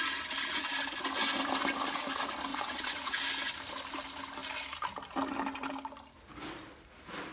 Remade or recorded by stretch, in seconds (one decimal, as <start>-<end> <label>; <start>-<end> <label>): 0.0-2.5 recorded; 2.5-3.2 remade; 3.2-7.3 recorded